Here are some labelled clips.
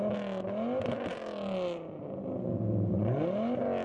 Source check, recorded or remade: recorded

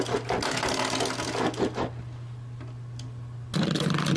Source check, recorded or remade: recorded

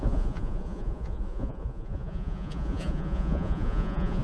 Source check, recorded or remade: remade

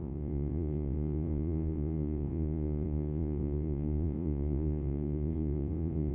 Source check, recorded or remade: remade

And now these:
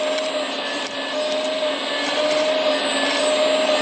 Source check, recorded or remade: recorded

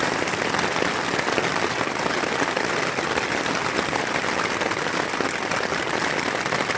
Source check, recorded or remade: recorded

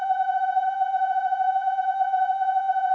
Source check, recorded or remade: remade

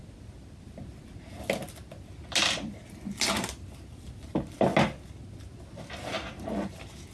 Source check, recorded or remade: recorded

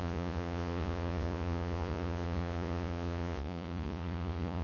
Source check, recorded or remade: remade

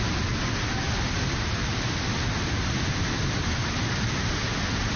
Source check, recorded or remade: recorded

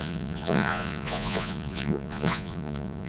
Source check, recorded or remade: remade